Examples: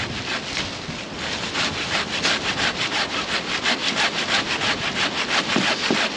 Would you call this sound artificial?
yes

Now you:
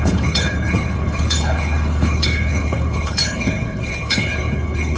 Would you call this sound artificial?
yes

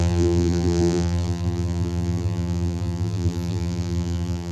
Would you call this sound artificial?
yes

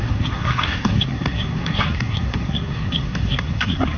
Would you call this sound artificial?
yes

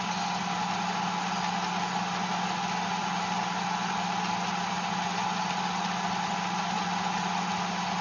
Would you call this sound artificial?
no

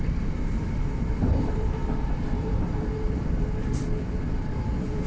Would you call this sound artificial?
yes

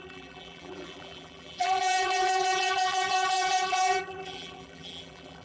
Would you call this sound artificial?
yes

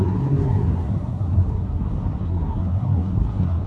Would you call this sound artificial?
yes